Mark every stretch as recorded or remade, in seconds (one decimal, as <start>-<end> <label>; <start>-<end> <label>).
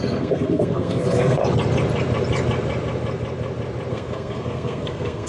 0.0-1.4 remade; 1.4-3.9 recorded; 3.9-5.3 remade